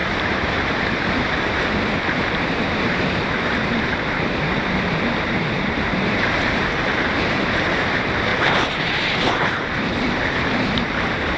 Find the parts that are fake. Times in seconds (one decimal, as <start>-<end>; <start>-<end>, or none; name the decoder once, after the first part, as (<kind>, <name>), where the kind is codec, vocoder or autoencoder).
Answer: 0.0-8.3 (vocoder, BigVGAN v2); 8.8-11.4

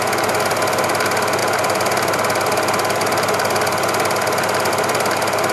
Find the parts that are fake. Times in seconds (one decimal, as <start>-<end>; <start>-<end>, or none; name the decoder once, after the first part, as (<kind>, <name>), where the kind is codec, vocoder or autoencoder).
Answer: none

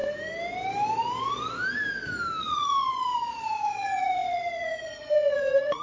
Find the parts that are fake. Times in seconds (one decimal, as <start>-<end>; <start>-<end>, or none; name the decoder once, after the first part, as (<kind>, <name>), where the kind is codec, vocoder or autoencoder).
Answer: 2.4-5.8 (vocoder, Vocos)

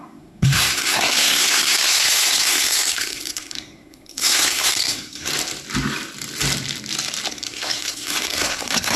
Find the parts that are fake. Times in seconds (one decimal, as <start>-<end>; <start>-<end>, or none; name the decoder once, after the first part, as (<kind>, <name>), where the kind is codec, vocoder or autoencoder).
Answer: 0.0-5.3 (codec, SNAC); 7.3-9.0

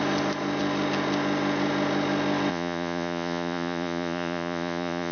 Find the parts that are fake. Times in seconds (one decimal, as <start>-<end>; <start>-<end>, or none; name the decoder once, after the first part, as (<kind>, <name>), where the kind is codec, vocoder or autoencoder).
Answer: 2.5-5.1 (vocoder, Vocos)